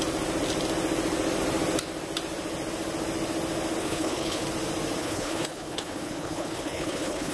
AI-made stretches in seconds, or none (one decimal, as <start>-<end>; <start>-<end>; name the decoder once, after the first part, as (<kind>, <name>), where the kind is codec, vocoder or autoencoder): 3.8-4.4 (codec, HILCodec); 5.0-7.3